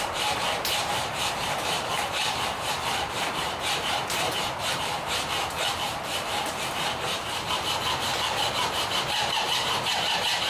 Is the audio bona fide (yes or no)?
no